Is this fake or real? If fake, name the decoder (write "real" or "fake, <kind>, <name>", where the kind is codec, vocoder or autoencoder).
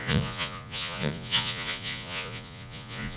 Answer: fake, vocoder, Vocos